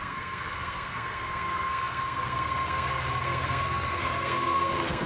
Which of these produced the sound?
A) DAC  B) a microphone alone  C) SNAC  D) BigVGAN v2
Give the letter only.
C